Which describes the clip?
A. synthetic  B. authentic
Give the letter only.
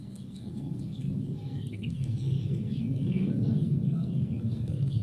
A